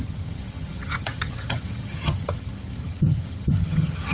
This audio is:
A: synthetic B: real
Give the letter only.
A